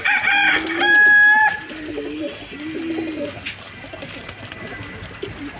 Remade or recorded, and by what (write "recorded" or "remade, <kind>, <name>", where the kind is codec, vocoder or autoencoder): recorded